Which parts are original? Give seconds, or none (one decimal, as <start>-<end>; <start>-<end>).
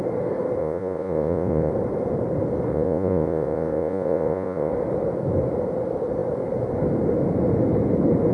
0.0-0.6; 1.7-2.7; 4.7-8.3